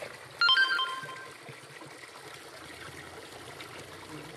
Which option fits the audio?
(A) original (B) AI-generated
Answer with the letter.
A